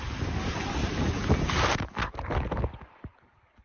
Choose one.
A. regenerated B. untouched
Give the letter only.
A